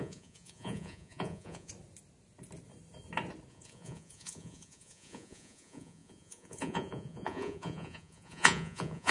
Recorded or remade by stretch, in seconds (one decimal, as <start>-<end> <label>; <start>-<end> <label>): 0.0-1.7 remade; 1.7-3.5 recorded; 3.5-9.1 remade